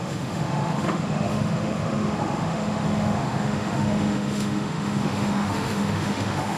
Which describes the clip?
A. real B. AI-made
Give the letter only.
B